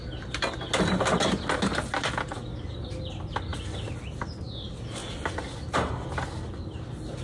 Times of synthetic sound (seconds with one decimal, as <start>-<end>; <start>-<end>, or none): none